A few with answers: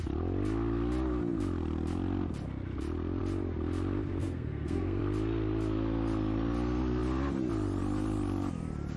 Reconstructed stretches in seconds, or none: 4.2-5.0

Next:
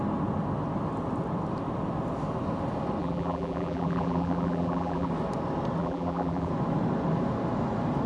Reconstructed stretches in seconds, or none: 3.0-5.1; 5.8-6.5

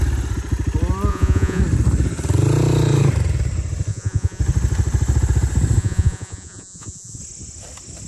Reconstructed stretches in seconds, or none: 1.1-1.6; 3.9-4.4; 5.8-7.2

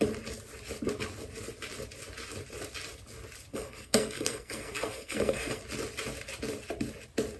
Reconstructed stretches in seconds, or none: 3.5-5.6

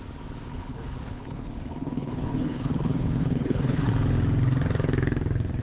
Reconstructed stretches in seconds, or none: 0.5-3.9

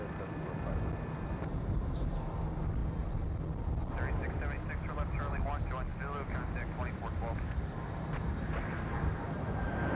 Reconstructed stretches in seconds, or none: none

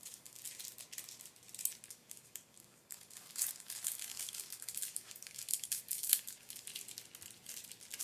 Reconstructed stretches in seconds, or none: 0.0-0.4; 1.9-6.7

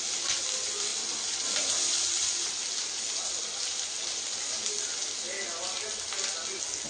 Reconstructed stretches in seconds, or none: none